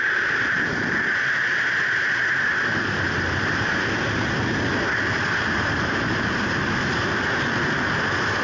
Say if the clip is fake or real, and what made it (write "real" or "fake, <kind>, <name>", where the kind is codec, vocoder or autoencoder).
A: real